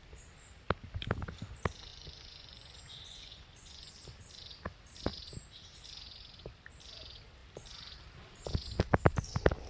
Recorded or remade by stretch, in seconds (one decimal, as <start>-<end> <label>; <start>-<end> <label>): 0.0-1.9 recorded; 1.9-3.9 remade; 3.9-9.7 recorded